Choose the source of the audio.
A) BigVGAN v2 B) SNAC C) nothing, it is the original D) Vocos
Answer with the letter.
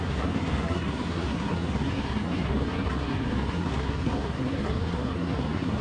B